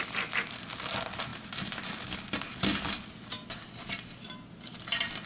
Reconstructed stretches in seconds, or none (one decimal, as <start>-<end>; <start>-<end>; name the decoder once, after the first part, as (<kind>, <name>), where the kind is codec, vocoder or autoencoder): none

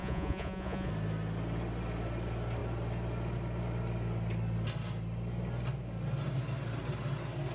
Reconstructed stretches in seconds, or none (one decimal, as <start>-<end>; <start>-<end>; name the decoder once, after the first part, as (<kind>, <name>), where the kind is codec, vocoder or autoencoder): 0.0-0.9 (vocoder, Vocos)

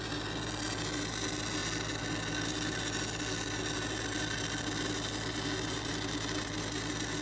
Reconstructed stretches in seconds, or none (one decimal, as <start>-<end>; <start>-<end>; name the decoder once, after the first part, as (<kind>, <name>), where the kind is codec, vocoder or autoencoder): none

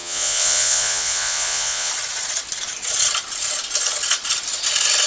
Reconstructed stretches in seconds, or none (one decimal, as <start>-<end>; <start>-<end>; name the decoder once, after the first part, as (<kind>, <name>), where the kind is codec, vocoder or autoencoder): 0.0-1.9 (vocoder, Vocos)

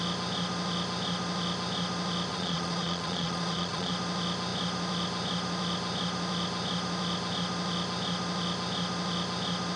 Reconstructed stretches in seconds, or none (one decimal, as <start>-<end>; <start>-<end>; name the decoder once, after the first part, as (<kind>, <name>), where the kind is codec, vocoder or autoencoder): 2.3-3.9 (vocoder, Vocos)

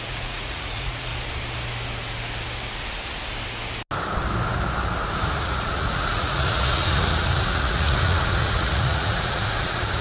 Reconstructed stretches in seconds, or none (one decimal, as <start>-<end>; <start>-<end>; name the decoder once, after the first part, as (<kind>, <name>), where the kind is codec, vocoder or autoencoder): 0.0-1.1 (vocoder, Vocos); 5.4-10.0